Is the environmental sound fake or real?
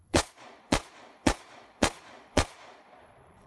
fake